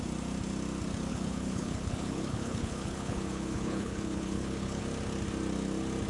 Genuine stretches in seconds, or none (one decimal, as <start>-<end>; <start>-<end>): 0.0-1.1; 4.8-6.1